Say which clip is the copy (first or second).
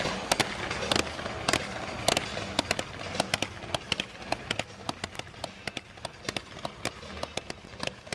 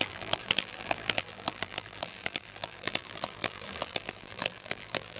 second